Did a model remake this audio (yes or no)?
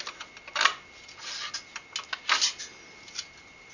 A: no